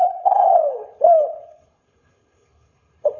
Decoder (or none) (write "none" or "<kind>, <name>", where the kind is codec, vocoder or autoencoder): codec, HILCodec